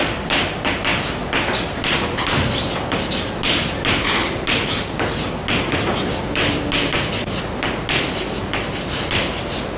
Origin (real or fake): real